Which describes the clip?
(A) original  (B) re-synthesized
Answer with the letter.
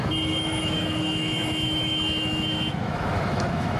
B